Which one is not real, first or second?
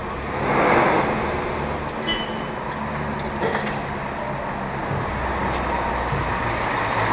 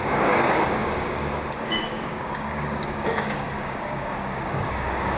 second